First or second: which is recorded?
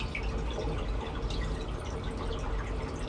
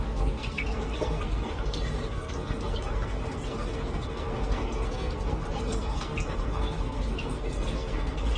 first